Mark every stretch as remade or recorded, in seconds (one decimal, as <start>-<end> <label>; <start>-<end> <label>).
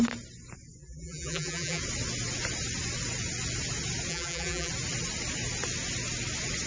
0.0-0.8 recorded; 0.8-1.8 remade; 1.8-4.1 recorded; 4.1-4.7 remade; 4.7-6.7 recorded